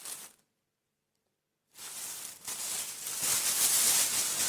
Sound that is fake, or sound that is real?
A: real